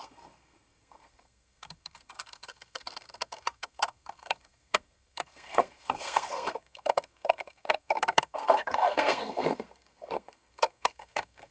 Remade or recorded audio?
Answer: remade